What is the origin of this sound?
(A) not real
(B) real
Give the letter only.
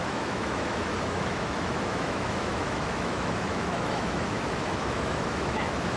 A